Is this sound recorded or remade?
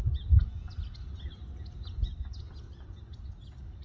recorded